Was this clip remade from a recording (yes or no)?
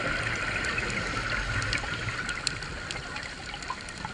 no